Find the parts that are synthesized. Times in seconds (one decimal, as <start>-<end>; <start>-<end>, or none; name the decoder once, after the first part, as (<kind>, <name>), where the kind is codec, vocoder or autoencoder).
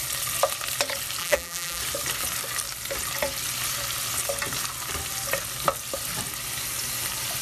1.2-1.8 (vocoder, BigVGAN v2)